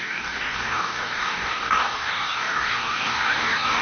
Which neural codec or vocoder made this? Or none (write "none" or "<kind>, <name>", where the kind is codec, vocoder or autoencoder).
codec, DAC